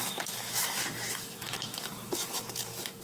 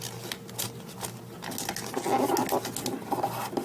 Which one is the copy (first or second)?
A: first